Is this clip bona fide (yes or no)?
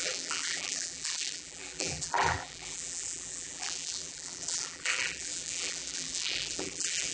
no